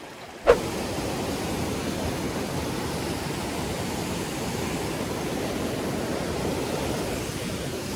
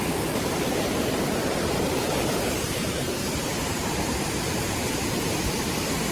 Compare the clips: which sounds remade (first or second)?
second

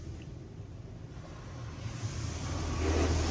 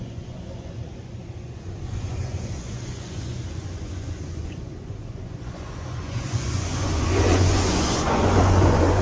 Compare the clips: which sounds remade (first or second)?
second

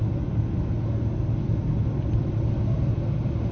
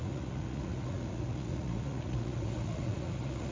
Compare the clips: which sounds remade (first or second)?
second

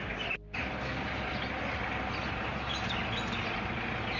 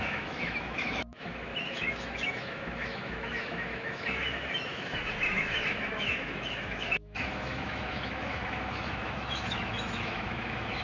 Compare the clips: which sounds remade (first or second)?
second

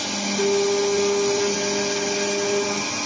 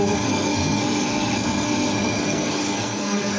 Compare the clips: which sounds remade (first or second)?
second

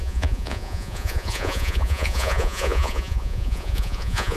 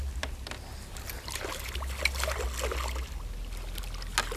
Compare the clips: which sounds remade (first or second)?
first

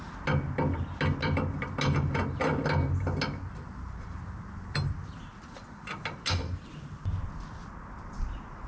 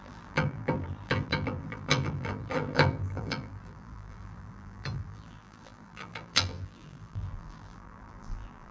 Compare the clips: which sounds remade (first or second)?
second